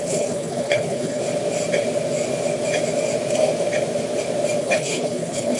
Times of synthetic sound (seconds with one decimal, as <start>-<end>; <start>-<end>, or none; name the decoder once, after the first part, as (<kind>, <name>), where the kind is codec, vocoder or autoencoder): 0.0-1.2 (codec, HILCodec); 4.6-5.6